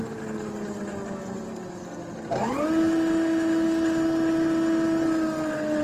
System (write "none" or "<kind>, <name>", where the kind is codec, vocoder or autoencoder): none